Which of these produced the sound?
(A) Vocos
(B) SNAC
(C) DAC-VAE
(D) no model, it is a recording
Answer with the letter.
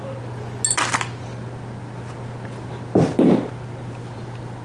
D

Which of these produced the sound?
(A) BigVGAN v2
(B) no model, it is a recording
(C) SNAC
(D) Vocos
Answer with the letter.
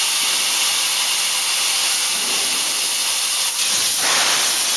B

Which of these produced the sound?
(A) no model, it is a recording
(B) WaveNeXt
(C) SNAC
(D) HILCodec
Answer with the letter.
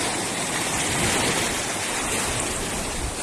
A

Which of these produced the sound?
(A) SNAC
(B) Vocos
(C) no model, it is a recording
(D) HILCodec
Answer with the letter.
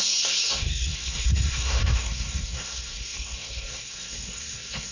A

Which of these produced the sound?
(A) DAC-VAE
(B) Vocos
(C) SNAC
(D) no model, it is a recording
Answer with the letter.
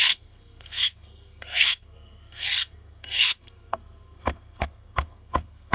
C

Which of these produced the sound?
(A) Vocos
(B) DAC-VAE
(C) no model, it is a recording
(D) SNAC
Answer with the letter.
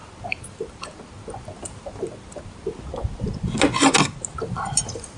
C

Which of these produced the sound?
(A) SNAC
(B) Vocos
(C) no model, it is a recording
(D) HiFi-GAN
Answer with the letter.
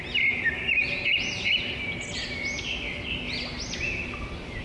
C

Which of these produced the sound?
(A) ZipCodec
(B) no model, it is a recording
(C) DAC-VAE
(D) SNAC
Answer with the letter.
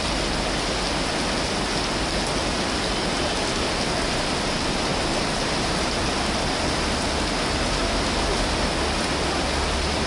B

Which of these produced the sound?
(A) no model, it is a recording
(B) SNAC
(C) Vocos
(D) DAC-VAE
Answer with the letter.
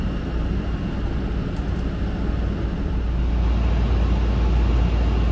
A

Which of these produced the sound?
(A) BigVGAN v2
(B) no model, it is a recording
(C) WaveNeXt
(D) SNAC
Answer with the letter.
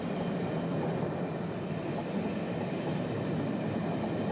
B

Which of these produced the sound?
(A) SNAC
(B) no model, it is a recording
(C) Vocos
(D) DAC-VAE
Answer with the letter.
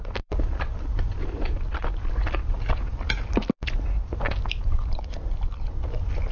B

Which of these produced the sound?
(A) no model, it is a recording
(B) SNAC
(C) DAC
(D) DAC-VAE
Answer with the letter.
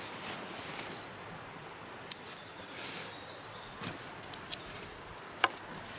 A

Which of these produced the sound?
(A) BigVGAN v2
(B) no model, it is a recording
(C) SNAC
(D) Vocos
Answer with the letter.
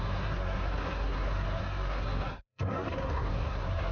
C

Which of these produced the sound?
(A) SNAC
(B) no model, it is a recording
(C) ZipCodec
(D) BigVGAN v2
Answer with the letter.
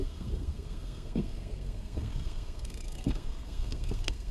A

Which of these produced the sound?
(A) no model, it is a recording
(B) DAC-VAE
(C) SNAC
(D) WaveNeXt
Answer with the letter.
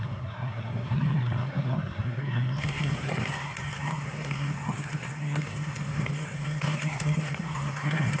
C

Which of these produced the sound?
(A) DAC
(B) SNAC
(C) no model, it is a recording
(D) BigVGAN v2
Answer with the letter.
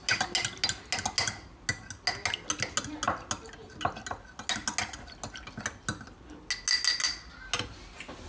C